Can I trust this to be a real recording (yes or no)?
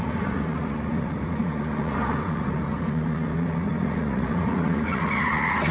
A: no